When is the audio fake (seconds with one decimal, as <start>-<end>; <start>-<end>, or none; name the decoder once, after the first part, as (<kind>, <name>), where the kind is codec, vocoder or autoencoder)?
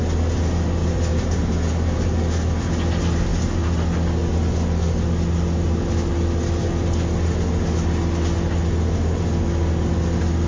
0.8-1.4 (vocoder, BigVGAN v2)